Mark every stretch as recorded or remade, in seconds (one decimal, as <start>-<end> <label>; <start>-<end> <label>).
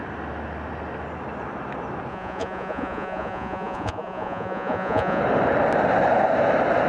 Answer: 0.0-2.1 recorded; 2.1-5.2 remade; 5.2-6.9 recorded